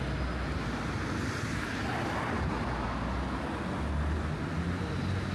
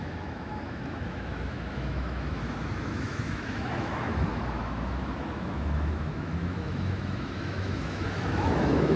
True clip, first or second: first